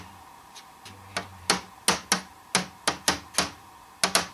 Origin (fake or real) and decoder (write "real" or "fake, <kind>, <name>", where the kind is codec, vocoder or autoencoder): real